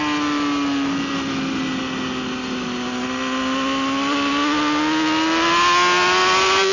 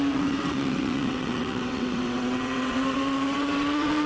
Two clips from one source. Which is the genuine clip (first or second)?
first